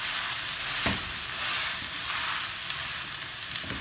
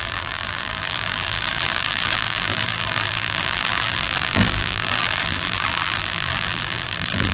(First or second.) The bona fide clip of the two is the first